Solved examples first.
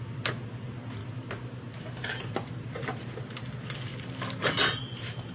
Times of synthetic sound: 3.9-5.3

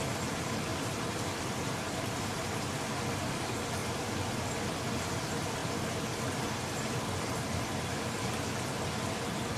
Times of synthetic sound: 0.7-2.6; 3.8-4.3

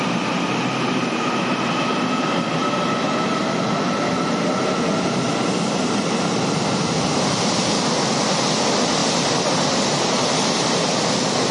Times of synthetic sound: 9.0-10.8